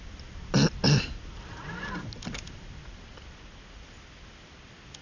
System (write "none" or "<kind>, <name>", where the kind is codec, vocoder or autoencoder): none